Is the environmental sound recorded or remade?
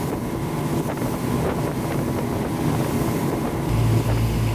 recorded